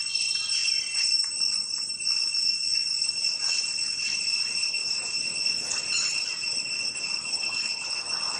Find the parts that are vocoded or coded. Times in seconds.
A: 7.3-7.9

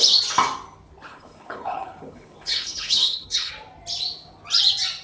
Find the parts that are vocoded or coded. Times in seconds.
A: 1.1-3.5

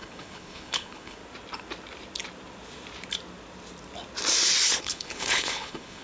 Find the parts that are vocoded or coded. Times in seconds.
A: 0.0-1.2; 4.8-6.0

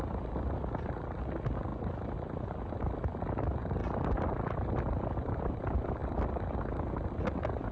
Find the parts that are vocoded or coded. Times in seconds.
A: none

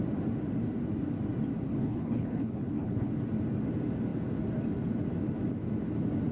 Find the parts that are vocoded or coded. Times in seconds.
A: 1.7-3.1

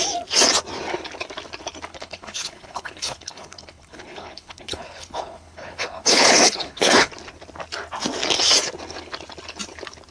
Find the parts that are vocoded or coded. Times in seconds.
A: 1.9-7.1